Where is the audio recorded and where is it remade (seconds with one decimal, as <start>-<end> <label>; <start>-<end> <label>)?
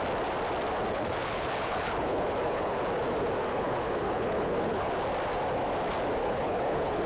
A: 0.0-0.9 recorded; 0.9-2.8 remade; 2.8-3.5 recorded; 3.5-4.9 remade; 4.9-6.2 recorded; 6.2-7.1 remade